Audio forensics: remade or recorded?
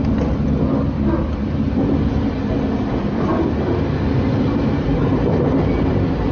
recorded